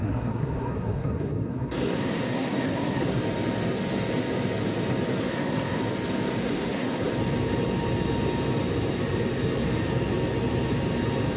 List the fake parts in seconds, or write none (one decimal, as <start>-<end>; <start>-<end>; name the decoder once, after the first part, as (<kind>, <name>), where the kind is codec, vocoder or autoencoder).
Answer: 0.0-3.2 (codec, SNAC); 5.2-5.8; 6.4-7.1